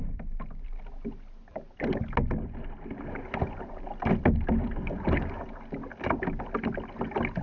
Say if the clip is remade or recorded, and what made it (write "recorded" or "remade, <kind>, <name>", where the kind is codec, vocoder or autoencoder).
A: recorded